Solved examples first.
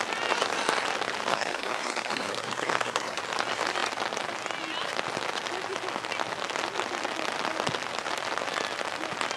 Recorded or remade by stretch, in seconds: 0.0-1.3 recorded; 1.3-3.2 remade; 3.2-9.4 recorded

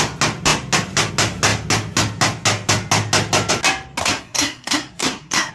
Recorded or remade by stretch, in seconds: 0.0-4.0 recorded; 4.0-5.5 remade

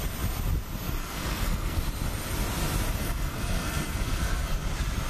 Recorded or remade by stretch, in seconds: 0.0-1.0 recorded; 1.0-1.8 remade; 1.8-3.0 recorded; 3.0-4.5 remade; 4.5-5.1 recorded

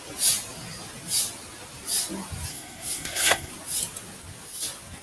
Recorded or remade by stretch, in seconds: 0.0-2.5 recorded; 2.5-3.5 remade; 3.5-5.0 recorded

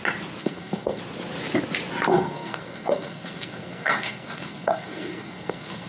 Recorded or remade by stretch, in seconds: 0.0-0.4 recorded; 0.4-1.0 remade; 1.0-2.1 recorded; 2.1-5.9 remade

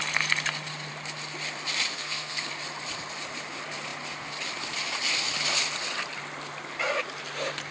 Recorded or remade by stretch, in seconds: 0.0-1.9 recorded; 1.9-2.5 remade; 2.5-7.7 recorded